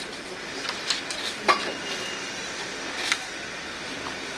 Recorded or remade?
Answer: recorded